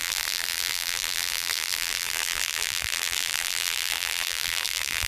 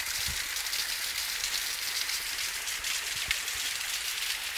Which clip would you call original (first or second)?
second